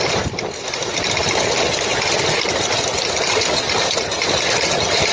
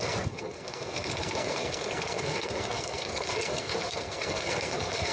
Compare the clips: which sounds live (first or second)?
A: first